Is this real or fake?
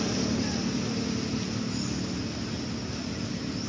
real